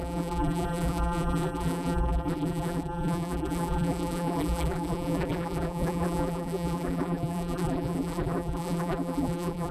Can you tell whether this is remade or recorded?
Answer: remade